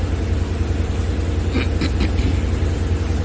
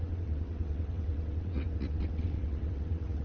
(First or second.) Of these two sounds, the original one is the first